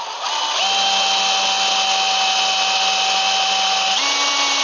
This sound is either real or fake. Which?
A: real